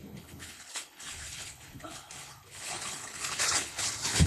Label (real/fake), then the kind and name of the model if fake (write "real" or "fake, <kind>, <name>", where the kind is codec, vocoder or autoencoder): fake, codec, HILCodec